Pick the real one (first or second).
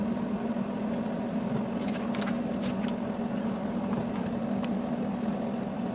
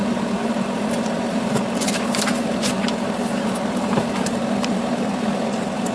first